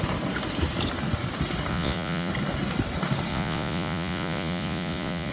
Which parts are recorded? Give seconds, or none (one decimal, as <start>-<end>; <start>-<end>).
0.0-1.7; 2.3-3.3